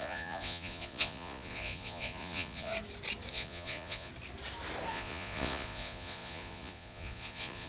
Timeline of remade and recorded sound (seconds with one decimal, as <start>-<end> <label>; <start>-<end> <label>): 0.0-2.7 remade; 2.7-3.3 recorded; 3.3-4.1 remade; 4.1-4.9 recorded; 4.9-7.7 remade